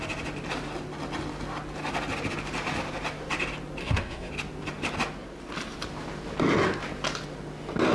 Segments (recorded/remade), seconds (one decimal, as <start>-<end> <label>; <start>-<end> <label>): 0.0-3.8 recorded; 3.8-4.3 remade; 4.3-7.9 recorded